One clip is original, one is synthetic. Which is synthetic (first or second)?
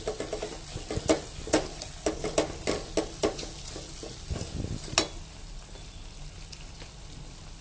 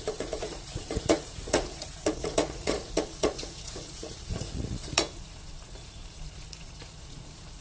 second